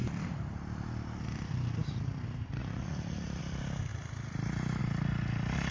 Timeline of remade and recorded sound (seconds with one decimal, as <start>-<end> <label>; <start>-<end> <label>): 0.0-2.6 recorded; 2.6-3.4 remade; 3.4-5.7 recorded